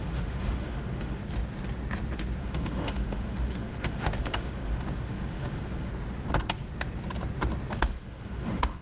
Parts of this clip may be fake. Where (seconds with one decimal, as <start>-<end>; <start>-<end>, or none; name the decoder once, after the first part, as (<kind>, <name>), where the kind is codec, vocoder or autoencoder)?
0.0-1.2 (autoencoder, DAC-VAE); 2.4-5.9; 7.7-8.8